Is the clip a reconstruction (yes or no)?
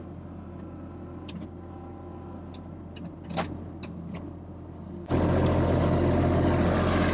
no